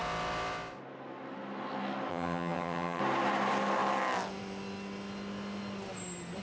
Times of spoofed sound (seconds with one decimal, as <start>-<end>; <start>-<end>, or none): 2.1-3.0